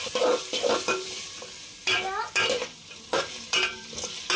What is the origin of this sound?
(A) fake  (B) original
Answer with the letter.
B